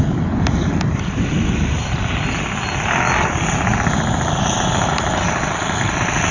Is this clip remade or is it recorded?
recorded